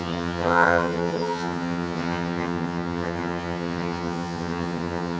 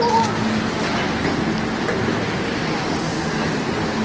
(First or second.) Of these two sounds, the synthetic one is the first